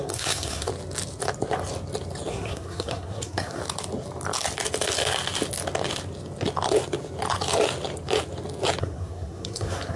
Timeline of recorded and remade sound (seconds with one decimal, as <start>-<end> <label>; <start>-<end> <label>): 0.0-0.7 remade; 0.7-2.3 recorded; 2.3-3.6 remade; 3.6-8.8 recorded; 8.8-10.0 remade